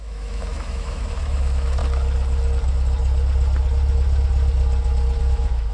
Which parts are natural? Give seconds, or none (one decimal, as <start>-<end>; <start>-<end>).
1.8-5.2